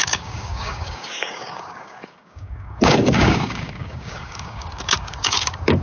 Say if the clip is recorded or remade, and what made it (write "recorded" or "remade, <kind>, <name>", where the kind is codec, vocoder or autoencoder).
remade, codec, DAC